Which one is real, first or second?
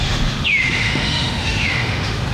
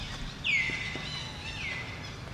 second